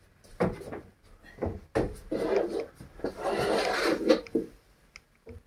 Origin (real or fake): real